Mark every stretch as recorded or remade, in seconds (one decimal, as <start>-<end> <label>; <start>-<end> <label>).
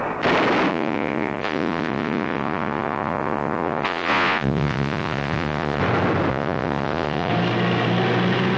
0.0-0.7 recorded; 0.7-5.8 remade; 5.8-6.3 recorded; 6.3-7.3 remade; 7.3-8.6 recorded